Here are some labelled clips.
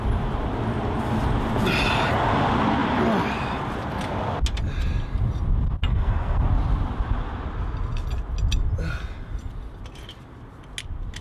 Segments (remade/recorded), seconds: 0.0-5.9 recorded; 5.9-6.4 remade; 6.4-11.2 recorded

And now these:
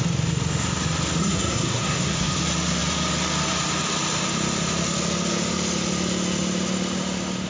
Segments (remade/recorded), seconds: 0.0-1.2 recorded; 1.2-2.4 remade; 2.4-7.5 recorded